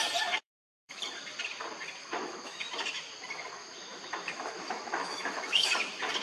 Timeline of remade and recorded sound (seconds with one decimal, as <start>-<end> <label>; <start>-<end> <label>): 0.0-0.4 recorded; 0.4-1.0 remade; 1.0-2.0 recorded; 2.0-2.7 remade; 2.7-3.6 recorded; 3.6-5.7 remade; 5.7-6.2 recorded